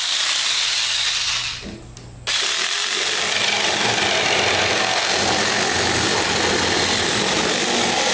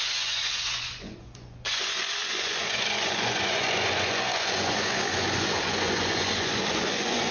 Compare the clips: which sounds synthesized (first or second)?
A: second